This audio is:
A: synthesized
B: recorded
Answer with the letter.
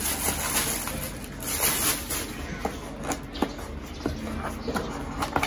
B